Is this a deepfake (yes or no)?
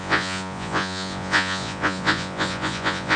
yes